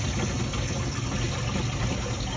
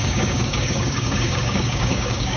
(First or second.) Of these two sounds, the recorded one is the first